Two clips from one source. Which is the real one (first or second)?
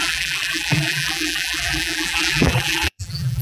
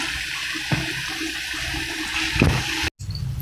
second